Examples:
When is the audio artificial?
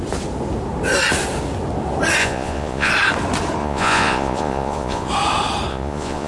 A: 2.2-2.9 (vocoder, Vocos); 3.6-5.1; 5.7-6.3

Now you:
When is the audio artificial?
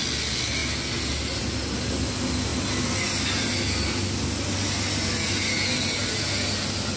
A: none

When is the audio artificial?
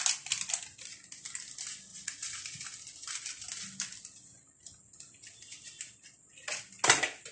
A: 1.9-2.4 (vocoder, Vocos)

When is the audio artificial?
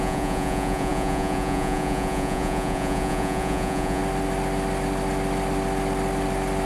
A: 0.0-4.0 (vocoder, Vocos)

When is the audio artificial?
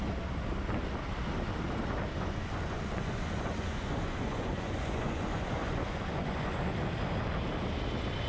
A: 2.1-6.6 (vocoder, Vocos)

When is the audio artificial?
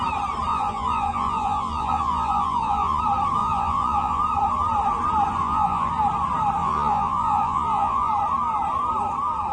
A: 0.5-3.0 (vocoder, Vocos); 3.4-4.2; 5.4-5.9; 6.6-8.1